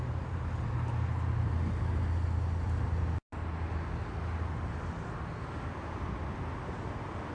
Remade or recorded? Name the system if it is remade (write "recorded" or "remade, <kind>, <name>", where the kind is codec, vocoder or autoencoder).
recorded